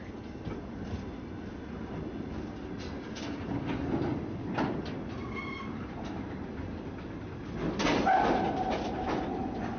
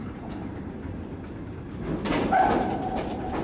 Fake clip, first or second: second